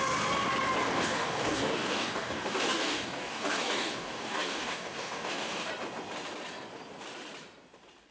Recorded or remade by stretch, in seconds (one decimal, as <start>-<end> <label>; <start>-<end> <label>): 0.0-0.8 recorded; 0.8-5.7 remade; 5.7-8.1 recorded